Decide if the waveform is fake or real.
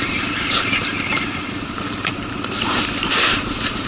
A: fake